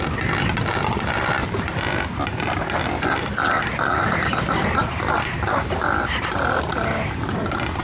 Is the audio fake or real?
real